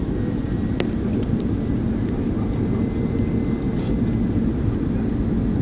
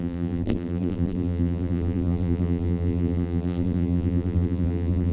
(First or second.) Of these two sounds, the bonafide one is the first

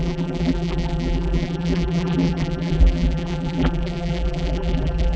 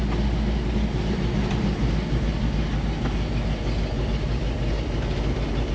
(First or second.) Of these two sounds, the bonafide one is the second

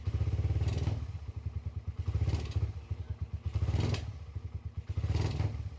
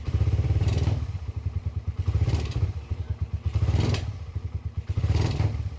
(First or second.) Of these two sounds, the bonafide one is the first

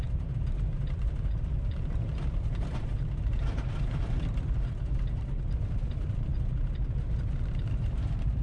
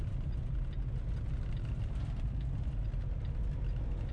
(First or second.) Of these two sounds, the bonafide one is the second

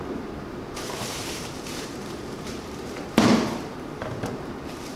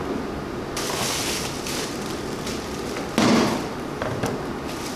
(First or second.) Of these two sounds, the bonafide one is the second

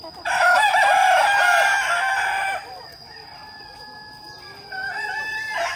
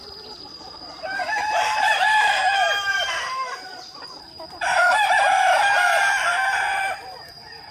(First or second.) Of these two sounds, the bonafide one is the first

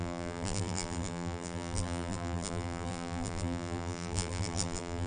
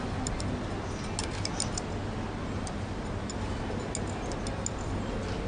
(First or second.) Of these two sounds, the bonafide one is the second